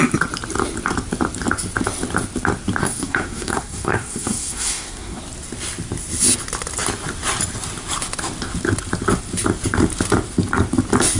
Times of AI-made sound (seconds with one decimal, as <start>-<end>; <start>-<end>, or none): 2.8-5.2